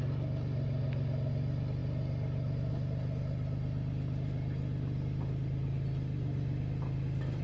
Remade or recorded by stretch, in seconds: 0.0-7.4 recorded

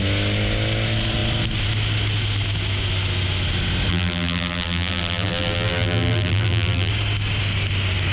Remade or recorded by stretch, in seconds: 0.0-3.9 recorded; 3.9-6.9 remade; 6.9-8.1 recorded

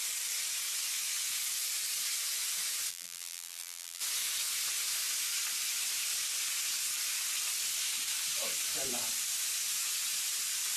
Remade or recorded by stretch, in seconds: 0.0-2.9 recorded; 2.9-4.0 remade; 4.0-10.8 recorded

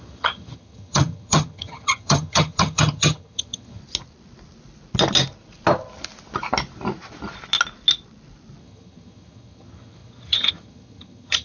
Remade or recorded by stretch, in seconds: 0.0-3.8 remade; 3.8-8.6 recorded; 8.6-11.4 remade

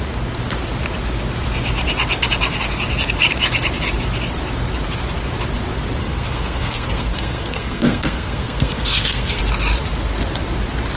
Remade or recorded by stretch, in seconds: 0.0-6.0 recorded; 6.0-9.4 remade; 9.4-11.0 recorded

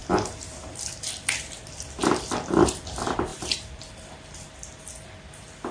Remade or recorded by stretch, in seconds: 0.0-5.7 recorded

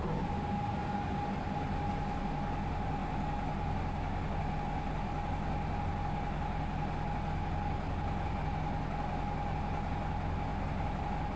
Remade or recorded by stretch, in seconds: 0.0-11.4 recorded

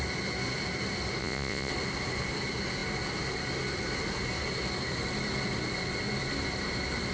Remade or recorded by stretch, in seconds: 0.0-1.2 recorded; 1.2-1.7 remade; 1.7-7.1 recorded